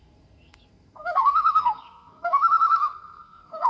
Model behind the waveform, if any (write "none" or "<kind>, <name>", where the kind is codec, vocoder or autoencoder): codec, SNAC